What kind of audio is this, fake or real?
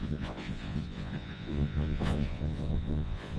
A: fake